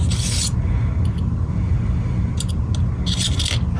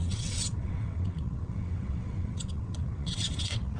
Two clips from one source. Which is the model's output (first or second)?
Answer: second